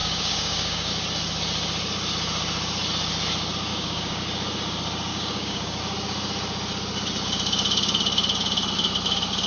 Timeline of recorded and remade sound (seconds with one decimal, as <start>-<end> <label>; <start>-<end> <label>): 0.0-0.9 remade; 0.9-3.7 recorded; 3.7-4.2 remade; 4.2-5.1 recorded; 5.1-5.8 remade; 5.8-9.5 recorded